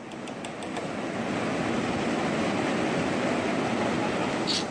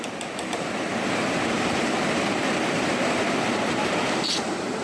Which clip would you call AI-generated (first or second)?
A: second